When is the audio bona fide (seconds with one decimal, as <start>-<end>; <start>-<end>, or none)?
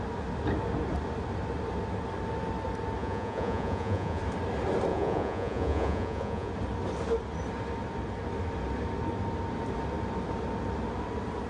0.0-3.0; 4.2-4.9; 6.5-11.5